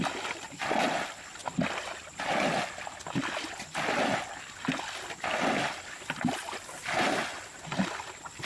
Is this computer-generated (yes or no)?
no